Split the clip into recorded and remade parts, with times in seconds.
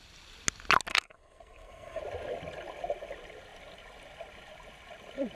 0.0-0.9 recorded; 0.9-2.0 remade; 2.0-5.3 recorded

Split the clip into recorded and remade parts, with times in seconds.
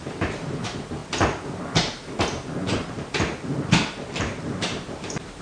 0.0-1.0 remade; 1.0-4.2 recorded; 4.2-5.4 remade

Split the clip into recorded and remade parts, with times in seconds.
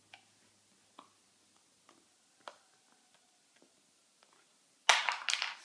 0.0-5.6 recorded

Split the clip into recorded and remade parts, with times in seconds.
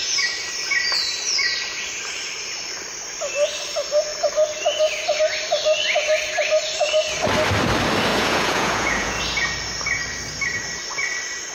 0.0-8.1 recorded; 8.1-9.2 remade; 9.2-11.5 recorded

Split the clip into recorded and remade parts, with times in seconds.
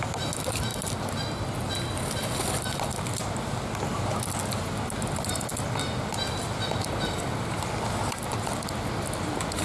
0.0-9.6 recorded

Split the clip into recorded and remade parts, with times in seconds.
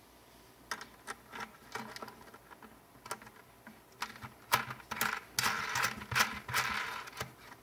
0.0-7.6 recorded